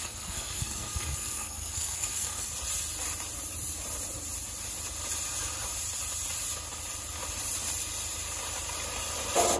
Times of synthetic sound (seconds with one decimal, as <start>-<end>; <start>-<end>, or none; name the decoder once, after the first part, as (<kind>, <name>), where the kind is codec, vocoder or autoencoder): 0.0-2.5 (codec, SNAC)